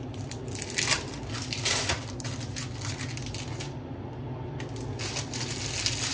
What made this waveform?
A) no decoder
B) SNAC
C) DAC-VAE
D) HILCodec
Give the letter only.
A